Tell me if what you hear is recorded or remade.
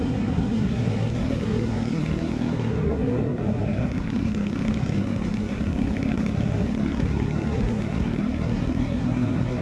remade